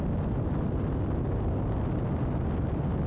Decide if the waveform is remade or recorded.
recorded